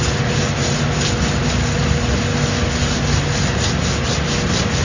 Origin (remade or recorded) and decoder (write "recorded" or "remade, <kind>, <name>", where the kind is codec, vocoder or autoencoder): recorded